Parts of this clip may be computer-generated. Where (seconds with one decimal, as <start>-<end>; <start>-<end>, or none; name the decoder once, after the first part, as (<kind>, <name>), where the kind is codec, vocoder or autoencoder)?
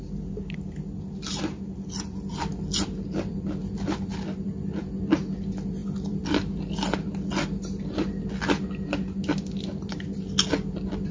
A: none